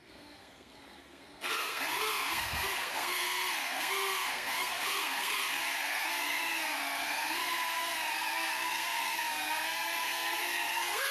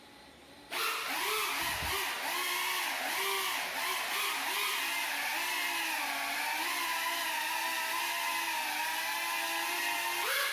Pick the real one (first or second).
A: second